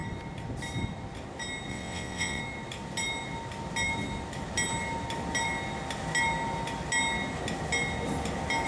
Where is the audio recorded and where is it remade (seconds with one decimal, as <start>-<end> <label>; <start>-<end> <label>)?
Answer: 0.0-1.7 recorded; 1.7-2.4 remade; 2.4-8.7 recorded